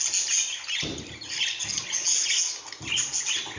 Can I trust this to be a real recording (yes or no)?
yes